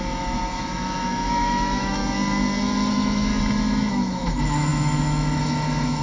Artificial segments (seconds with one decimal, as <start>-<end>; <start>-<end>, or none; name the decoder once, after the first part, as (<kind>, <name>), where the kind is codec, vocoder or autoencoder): 0.0-2.0 (autoencoder, DAC-VAE); 2.9-3.3; 3.9-6.0